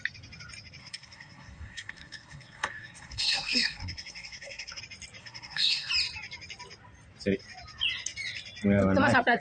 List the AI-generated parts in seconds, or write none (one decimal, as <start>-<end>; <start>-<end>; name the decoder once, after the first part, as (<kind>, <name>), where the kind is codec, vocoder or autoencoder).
0.8-4.8 (codec, SNAC); 5.2-5.9